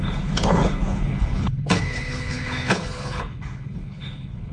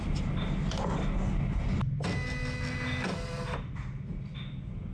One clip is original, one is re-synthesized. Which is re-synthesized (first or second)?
first